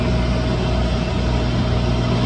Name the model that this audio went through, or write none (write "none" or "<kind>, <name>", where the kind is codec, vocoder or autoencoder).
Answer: none